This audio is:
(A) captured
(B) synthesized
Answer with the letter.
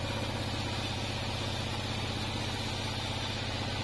A